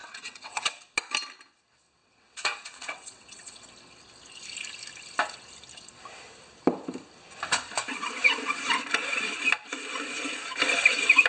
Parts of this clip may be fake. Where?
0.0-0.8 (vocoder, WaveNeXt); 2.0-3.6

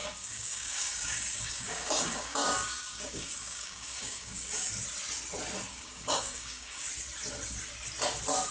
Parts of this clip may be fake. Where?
0.0-4.7 (codec, DAC); 5.7-6.9